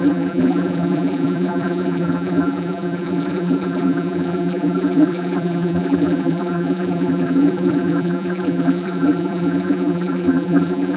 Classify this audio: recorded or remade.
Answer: remade